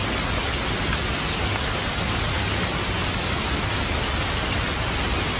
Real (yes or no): yes